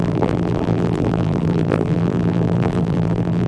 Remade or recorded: remade